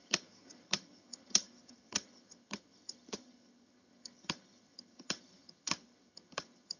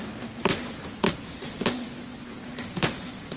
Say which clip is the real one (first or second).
second